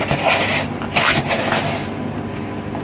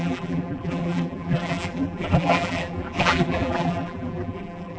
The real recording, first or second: first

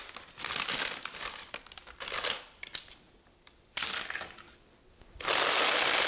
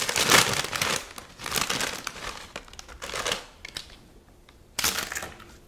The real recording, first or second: second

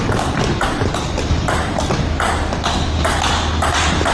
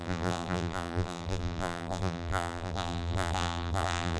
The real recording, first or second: first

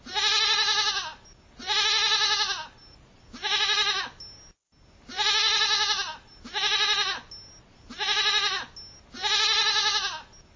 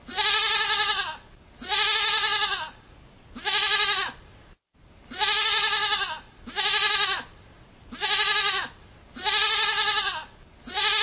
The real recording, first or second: first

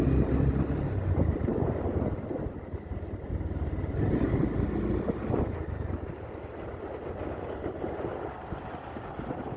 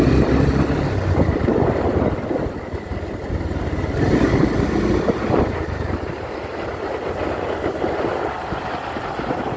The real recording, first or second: first